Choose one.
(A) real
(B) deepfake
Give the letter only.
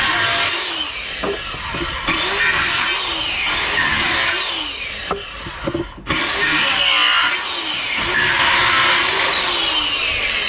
A